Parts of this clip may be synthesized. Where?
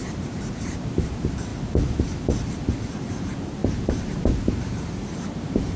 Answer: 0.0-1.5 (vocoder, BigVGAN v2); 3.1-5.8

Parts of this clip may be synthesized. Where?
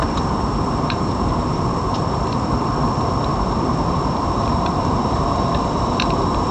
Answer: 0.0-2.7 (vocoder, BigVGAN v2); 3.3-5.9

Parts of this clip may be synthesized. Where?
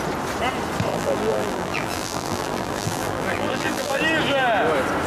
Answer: 0.9-4.0 (vocoder, BigVGAN v2)